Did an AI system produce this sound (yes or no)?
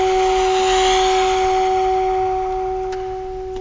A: no